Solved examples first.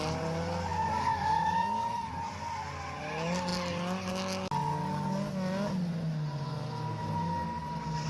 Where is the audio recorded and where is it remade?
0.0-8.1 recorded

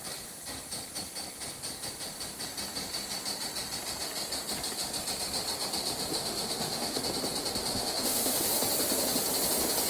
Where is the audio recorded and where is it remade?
0.0-6.1 recorded; 6.1-7.0 remade; 7.0-7.7 recorded; 7.7-8.6 remade; 8.6-9.9 recorded